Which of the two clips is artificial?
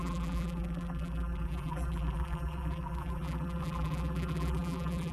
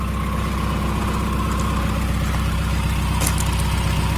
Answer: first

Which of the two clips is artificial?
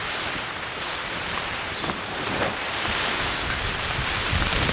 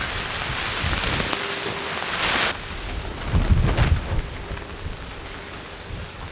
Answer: first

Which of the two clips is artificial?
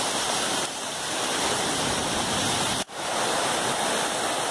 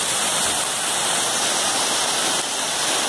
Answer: first